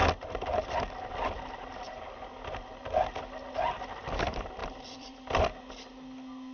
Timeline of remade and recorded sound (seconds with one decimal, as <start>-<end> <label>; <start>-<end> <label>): 0.0-4.6 recorded; 4.6-5.4 remade; 5.4-6.5 recorded